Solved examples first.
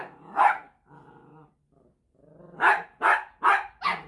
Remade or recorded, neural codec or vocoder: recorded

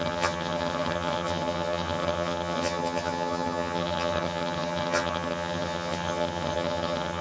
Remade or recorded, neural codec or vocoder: remade, vocoder, HiFi-GAN